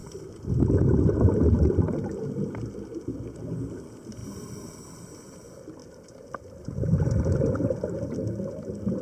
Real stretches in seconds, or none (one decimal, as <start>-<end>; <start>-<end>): 0.0-4.2; 4.7-9.0

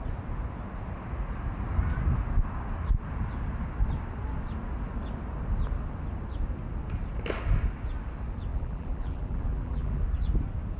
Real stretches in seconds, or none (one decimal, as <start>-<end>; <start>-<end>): 0.0-8.5; 10.0-10.8

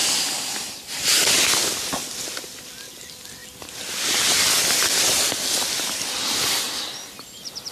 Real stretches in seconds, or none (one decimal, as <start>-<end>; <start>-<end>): 3.4-4.3